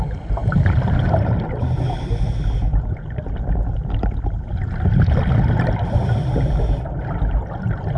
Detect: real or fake real